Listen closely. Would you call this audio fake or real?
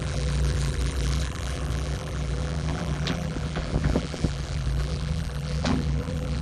fake